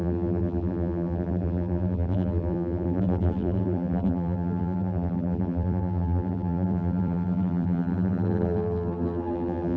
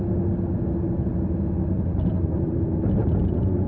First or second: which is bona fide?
second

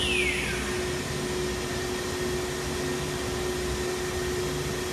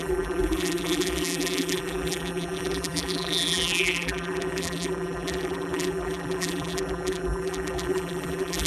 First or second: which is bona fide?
first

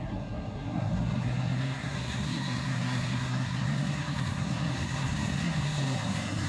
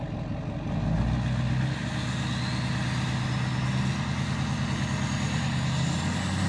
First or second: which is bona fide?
second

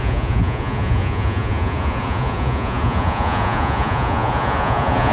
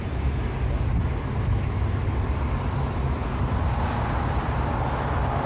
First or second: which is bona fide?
second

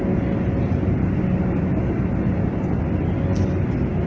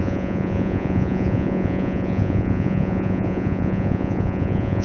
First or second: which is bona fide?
first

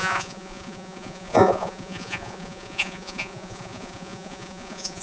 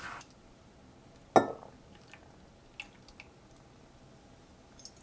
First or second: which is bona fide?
second